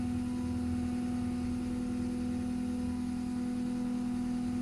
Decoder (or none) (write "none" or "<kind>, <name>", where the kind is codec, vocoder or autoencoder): none